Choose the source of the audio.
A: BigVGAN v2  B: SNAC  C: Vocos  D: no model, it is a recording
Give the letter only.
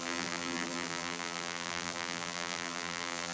A